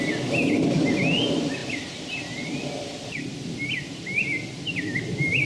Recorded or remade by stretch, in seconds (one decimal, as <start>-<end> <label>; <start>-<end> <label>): 0.0-1.6 recorded; 1.6-3.2 remade; 3.2-5.5 recorded

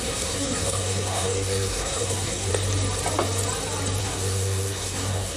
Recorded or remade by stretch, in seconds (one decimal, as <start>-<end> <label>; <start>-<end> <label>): 0.0-2.5 remade; 2.5-4.0 recorded; 4.0-5.4 remade

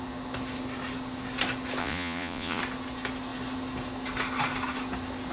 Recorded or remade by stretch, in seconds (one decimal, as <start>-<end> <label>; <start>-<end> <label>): 0.0-1.8 recorded; 1.8-2.6 remade; 2.6-5.3 recorded

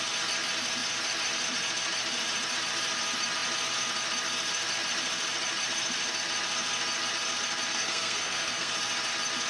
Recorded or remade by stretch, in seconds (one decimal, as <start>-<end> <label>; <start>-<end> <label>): 0.0-7.7 recorded; 7.7-8.7 remade; 8.7-9.5 recorded

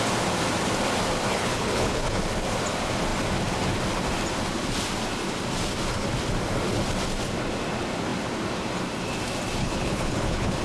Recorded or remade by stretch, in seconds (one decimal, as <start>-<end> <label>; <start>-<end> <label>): 0.0-1.3 recorded; 1.3-2.2 remade; 2.2-9.6 recorded; 9.6-10.6 remade